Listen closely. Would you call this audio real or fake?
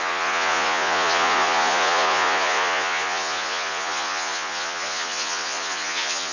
fake